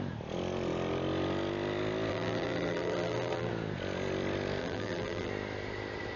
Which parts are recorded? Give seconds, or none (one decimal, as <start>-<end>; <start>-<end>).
0.0-2.1; 3.5-4.6; 5.3-6.2